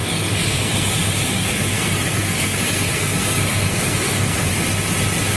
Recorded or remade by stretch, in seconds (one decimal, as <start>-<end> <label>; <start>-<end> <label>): 0.0-0.9 remade; 0.9-1.3 recorded; 1.3-4.5 remade; 4.5-5.4 recorded